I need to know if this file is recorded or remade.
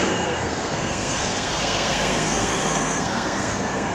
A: remade